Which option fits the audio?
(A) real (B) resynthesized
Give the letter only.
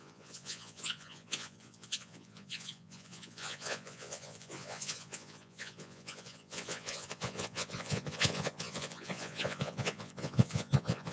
B